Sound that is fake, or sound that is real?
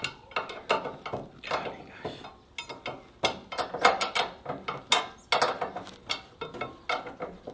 real